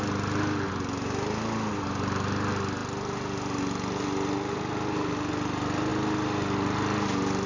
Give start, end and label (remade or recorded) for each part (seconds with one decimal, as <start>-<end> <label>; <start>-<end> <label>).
0.0-7.5 recorded